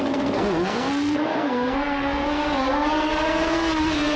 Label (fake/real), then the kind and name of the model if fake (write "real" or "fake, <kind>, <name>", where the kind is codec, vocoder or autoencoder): fake, codec, SNAC